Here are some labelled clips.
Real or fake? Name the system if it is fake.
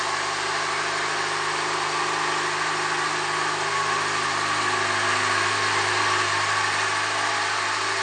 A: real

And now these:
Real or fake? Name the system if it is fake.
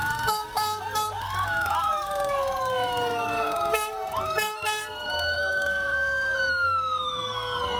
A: fake, codec, SNAC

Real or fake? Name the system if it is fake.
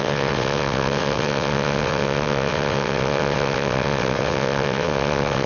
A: fake, vocoder, WaveNeXt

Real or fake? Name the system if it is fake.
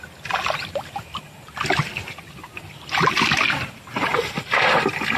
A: real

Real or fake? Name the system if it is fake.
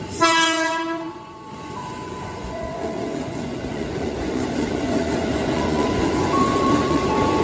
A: fake, vocoder, Vocos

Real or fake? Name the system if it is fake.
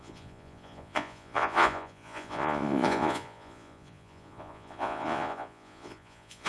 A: fake, vocoder, Vocos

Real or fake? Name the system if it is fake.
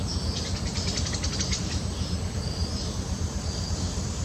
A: fake, vocoder, BigVGAN v2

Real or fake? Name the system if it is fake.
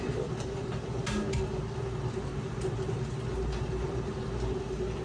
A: real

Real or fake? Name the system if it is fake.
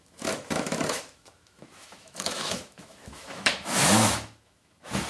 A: fake, autoencoder, DAC-VAE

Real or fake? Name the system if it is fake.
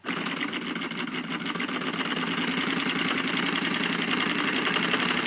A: real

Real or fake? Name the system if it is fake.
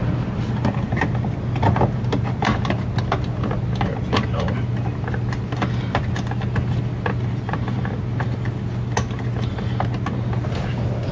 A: real